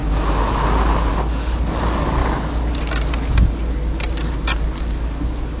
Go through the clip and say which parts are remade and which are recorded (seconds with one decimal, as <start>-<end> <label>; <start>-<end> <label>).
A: 0.0-1.1 recorded; 1.1-2.2 remade; 2.2-4.8 recorded; 4.8-5.6 remade